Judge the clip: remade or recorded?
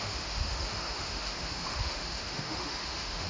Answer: remade